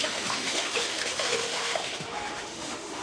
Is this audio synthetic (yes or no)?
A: yes